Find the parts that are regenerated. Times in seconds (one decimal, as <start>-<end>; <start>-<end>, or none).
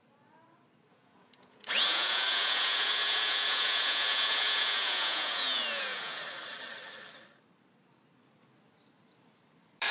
0.9-6.2